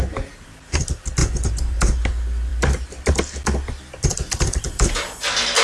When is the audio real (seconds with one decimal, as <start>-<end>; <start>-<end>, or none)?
0.0-1.2; 2.0-5.6